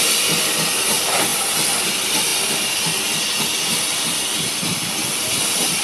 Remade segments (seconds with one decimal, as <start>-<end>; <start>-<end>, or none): none